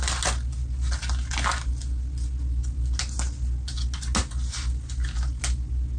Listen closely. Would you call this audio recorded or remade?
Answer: recorded